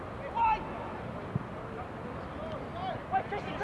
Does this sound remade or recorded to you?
recorded